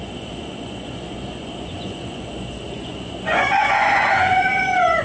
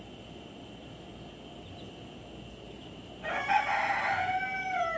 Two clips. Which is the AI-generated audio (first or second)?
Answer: first